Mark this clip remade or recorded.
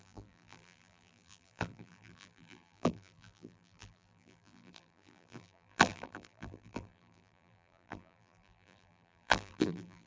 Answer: remade